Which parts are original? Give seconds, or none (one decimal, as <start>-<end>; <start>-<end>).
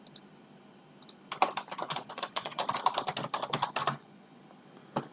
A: 0.0-1.8; 2.6-3.8; 4.4-5.1